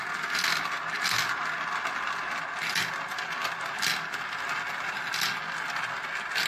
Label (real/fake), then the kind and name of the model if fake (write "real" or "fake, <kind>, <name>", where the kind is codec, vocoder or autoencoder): real